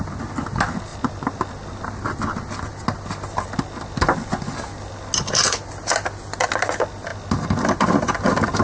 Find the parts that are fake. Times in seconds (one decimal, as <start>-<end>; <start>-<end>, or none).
none